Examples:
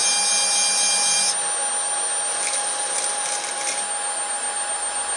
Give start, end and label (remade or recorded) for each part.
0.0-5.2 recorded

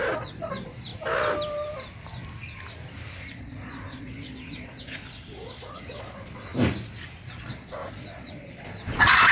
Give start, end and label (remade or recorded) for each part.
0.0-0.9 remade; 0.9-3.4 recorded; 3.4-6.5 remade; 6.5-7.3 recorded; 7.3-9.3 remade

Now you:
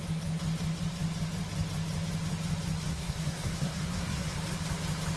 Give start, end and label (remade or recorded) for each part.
0.0-2.9 recorded; 2.9-4.4 remade; 4.4-5.2 recorded